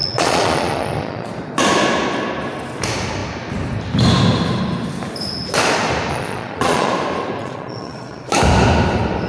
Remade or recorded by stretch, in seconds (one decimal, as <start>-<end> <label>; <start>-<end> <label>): 0.0-1.3 remade; 1.3-6.1 recorded; 6.1-6.9 remade; 6.9-7.4 recorded; 7.4-8.3 remade; 8.3-9.3 recorded